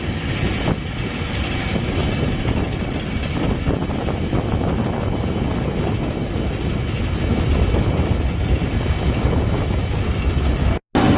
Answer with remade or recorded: recorded